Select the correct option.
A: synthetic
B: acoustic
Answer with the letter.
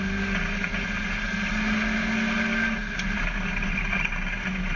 B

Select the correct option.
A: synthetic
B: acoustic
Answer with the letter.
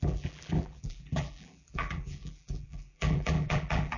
A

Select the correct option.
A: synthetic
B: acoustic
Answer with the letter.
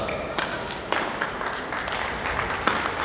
B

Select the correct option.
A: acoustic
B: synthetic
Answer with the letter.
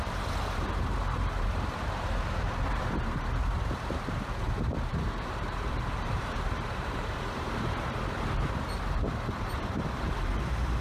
B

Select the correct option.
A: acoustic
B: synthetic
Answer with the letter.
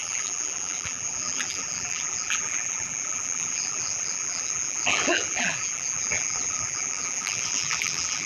B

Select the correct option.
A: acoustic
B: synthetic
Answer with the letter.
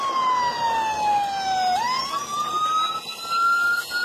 A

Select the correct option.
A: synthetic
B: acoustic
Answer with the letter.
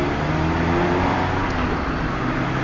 B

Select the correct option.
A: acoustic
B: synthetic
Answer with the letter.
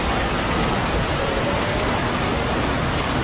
A